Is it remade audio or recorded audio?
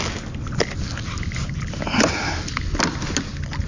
recorded